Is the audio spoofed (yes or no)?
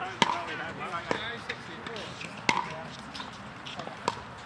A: no